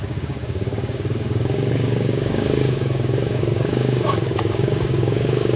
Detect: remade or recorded remade